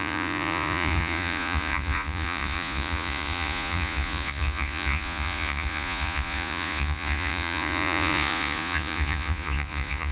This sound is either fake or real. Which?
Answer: fake